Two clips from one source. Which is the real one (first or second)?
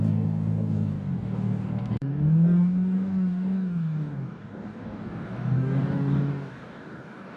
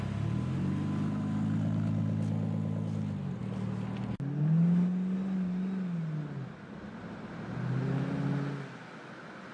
second